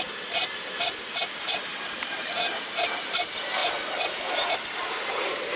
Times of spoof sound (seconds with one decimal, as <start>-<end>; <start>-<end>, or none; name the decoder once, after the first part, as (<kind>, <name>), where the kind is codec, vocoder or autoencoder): 0.0-3.6 (vocoder, BigVGAN v2); 4.5-5.6

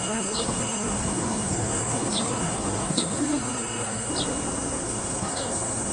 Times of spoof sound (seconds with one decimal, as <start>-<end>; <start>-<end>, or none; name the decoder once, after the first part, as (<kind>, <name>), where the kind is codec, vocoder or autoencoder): 0.0-4.1 (codec, SNAC); 4.8-5.9

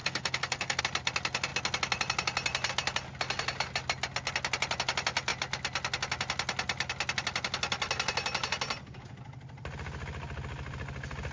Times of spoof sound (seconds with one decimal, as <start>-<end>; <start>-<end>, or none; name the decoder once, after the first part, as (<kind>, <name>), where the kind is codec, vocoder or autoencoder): 0.0-0.8 (codec, SNAC)

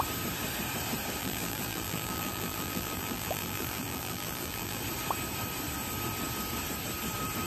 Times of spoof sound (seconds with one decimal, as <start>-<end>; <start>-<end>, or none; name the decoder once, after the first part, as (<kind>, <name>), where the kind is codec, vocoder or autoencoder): 1.2-4.8 (vocoder, BigVGAN v2)

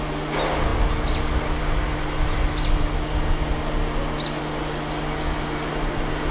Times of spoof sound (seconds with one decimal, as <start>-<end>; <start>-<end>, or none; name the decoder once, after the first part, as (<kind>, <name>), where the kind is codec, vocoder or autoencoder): none

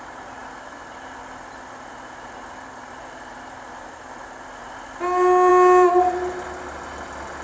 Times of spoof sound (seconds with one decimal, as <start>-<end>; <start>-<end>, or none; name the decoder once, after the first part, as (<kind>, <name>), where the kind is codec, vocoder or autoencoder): none